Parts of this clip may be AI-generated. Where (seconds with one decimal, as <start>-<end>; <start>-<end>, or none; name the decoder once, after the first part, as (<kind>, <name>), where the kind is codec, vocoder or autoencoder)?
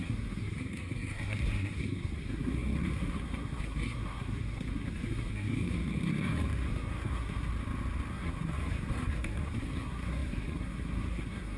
0.0-7.5 (codec, SNAC); 8.1-11.6